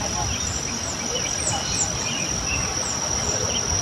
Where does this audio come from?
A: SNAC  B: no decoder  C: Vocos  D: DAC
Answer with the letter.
B